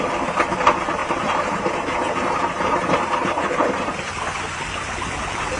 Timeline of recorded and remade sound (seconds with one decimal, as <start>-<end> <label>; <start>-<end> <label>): 0.0-1.0 recorded; 1.0-4.2 remade; 4.2-5.6 recorded